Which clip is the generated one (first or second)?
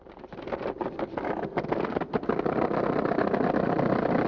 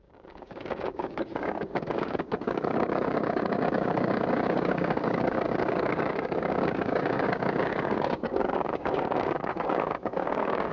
second